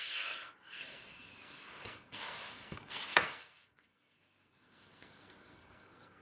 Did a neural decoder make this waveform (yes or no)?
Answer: yes